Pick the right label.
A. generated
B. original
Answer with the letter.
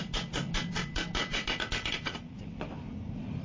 B